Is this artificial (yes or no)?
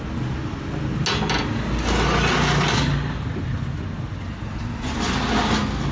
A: no